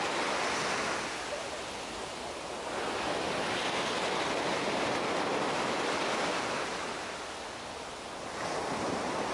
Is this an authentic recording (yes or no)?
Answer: yes